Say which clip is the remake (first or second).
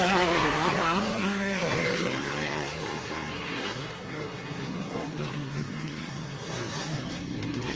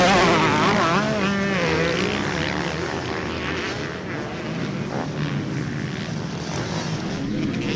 first